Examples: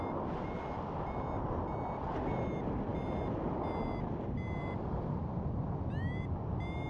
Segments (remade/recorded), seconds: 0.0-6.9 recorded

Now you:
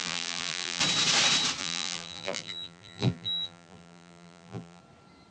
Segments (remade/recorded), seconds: 0.0-0.8 remade; 0.8-1.6 recorded; 1.6-4.8 remade; 4.8-5.3 recorded

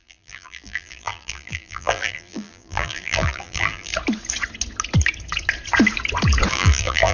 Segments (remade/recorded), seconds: 0.0-3.9 remade; 3.9-6.5 recorded; 6.5-7.1 remade

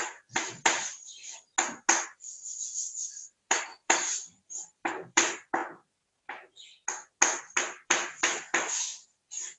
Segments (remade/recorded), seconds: 0.0-1.5 remade; 1.5-3.5 recorded; 3.5-5.6 remade; 5.6-7.4 recorded; 7.4-9.6 remade

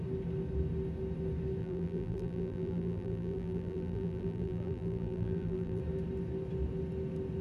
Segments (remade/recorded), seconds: 0.0-1.6 recorded; 1.6-5.8 remade; 5.8-7.4 recorded

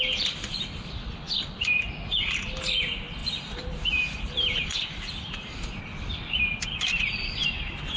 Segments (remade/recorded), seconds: 0.0-3.2 recorded; 3.2-5.7 remade; 5.7-8.0 recorded

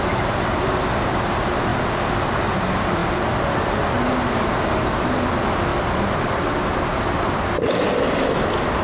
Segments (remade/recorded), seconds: 0.0-1.7 remade; 1.7-2.5 recorded; 2.5-5.7 remade; 5.7-8.8 recorded

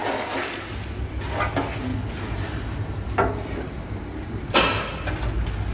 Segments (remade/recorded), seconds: 0.0-0.8 remade; 0.8-5.7 recorded